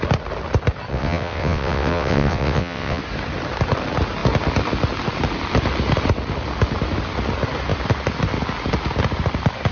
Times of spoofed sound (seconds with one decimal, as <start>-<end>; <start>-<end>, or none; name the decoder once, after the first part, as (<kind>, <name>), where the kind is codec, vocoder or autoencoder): 0.9-3.0 (vocoder, WaveNeXt)